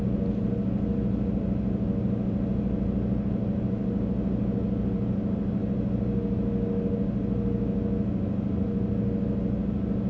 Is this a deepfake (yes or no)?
no